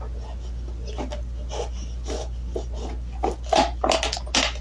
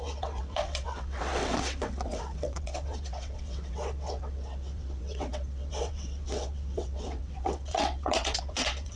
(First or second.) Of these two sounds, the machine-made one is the second